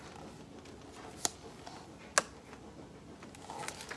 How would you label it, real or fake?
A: real